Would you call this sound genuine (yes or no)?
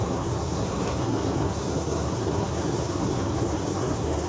no